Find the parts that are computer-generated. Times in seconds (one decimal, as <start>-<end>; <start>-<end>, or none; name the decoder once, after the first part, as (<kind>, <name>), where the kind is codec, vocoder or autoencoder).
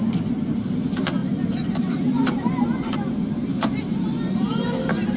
0.0-5.2 (vocoder, BigVGAN v2)